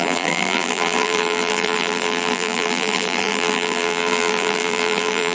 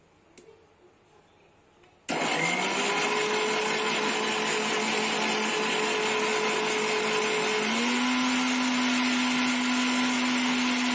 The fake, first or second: first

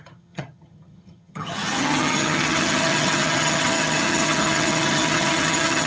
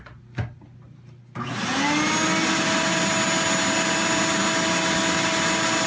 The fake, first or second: first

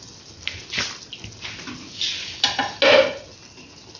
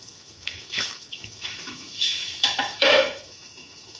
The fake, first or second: second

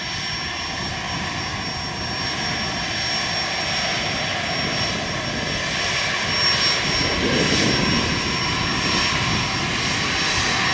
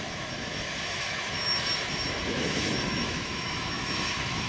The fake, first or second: second